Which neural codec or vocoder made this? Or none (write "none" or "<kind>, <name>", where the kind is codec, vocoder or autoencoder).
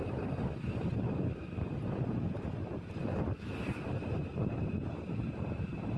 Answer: vocoder, BigVGAN v2